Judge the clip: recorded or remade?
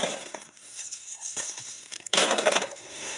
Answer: remade